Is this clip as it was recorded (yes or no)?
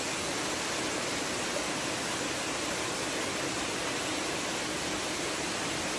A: yes